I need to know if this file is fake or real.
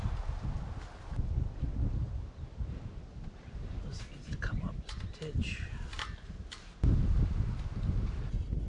real